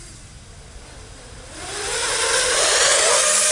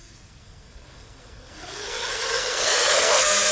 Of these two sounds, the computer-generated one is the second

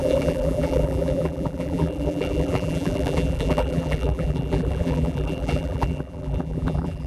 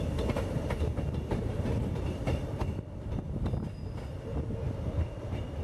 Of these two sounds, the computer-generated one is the first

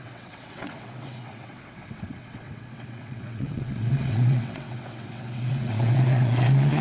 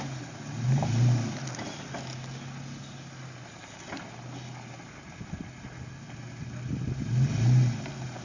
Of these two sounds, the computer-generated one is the first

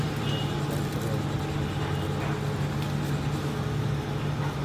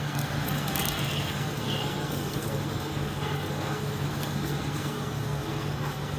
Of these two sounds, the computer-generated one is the second